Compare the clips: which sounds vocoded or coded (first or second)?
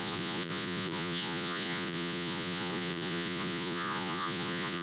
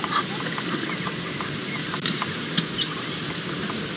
first